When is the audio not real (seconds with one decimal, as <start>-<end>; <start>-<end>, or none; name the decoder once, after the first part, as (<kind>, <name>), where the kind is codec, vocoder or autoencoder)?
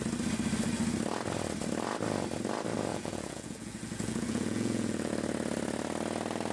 2.9-5.1 (vocoder, Vocos)